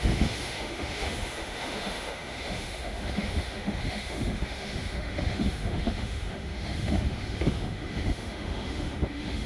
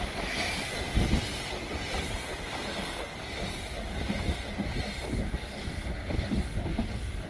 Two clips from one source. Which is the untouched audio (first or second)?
second